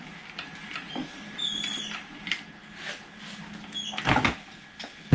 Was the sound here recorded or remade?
recorded